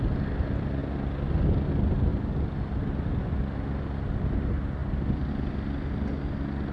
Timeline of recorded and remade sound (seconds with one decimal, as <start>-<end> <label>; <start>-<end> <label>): 0.0-2.1 recorded; 2.1-3.2 remade; 3.2-4.8 recorded; 4.8-5.3 remade; 5.3-6.7 recorded